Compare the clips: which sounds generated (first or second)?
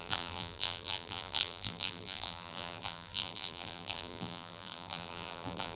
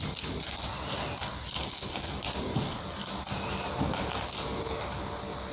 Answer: first